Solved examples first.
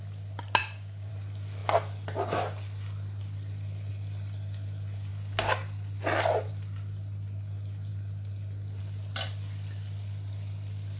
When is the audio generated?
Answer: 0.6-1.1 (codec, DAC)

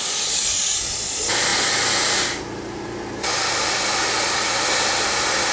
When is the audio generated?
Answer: 0.0-1.5 (vocoder, BigVGAN v2); 4.7-5.5

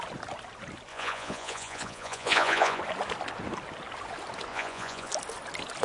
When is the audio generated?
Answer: 0.9-2.8 (vocoder, Vocos); 4.5-5.1